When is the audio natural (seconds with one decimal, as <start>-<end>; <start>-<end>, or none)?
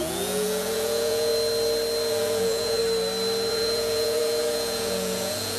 1.3-2.1; 2.8-3.5